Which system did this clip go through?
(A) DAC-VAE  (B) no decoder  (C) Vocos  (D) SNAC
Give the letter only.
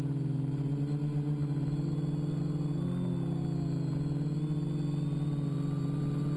B